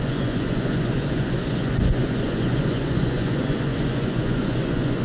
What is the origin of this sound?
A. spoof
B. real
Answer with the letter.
A